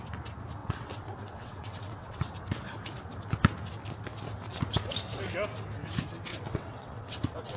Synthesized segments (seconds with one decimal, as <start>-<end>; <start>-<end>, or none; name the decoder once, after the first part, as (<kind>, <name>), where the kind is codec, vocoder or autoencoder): 0.6-2.2 (vocoder, WaveNeXt); 6.3-7.6